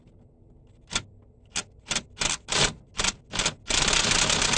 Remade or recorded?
recorded